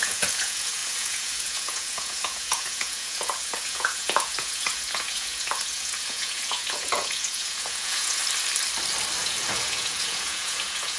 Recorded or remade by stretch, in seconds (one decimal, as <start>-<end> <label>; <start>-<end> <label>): 0.0-8.2 remade; 8.2-9.2 recorded; 9.2-11.0 remade